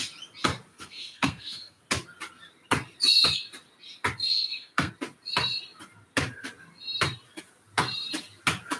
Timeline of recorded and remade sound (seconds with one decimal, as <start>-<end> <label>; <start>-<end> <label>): 0.0-0.7 recorded; 0.7-1.8 remade; 1.8-4.3 recorded; 4.3-4.9 remade; 4.9-8.8 recorded